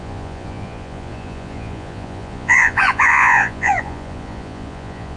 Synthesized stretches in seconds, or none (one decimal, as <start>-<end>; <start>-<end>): 0.0-5.2